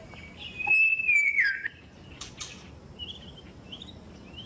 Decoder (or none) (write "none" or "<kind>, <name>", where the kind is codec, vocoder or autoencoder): none